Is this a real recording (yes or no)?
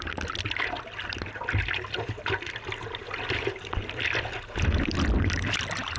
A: yes